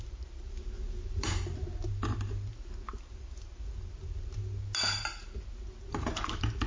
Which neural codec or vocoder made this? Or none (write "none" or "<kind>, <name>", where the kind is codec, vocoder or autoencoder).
none